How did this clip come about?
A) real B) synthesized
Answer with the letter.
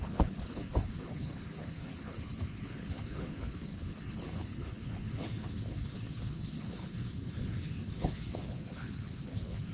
B